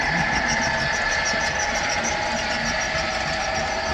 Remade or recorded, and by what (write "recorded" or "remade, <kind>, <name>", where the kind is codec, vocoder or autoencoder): recorded